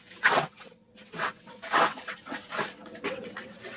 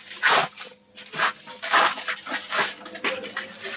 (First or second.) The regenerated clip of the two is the first